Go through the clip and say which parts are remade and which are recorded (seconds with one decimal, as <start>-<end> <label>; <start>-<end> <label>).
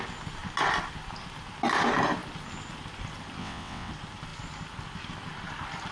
0.0-3.4 recorded; 3.4-3.9 remade; 3.9-5.9 recorded